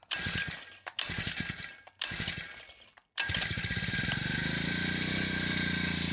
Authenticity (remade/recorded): recorded